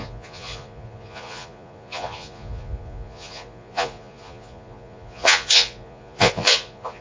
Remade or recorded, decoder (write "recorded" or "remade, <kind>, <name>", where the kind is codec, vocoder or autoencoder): remade, vocoder, Vocos